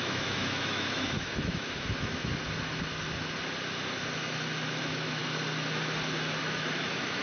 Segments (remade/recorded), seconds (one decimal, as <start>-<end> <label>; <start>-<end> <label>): 0.0-2.3 remade; 2.3-4.8 recorded; 4.8-5.2 remade; 5.2-6.4 recorded; 6.4-7.2 remade